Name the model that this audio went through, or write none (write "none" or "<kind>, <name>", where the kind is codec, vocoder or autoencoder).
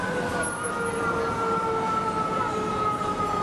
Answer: none